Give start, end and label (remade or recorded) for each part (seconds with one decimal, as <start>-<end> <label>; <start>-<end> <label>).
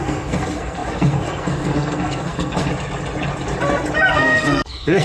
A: 0.0-2.7 remade; 2.7-4.1 recorded; 4.1-5.0 remade